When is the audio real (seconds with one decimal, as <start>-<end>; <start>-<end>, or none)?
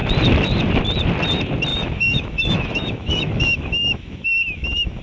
0.0-1.7